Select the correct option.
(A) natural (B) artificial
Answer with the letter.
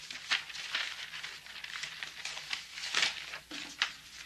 A